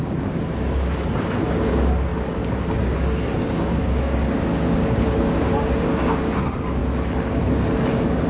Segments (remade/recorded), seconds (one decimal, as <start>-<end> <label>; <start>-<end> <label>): 0.0-6.8 remade; 6.8-8.3 recorded